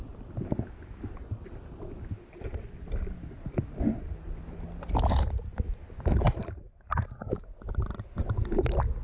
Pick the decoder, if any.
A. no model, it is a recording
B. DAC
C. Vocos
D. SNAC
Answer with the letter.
A